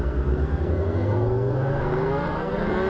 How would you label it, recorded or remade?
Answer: remade